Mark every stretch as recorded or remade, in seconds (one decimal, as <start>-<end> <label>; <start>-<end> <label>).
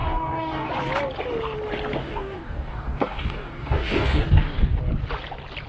0.0-0.7 remade; 0.7-2.0 recorded; 2.0-4.8 remade; 4.8-5.7 recorded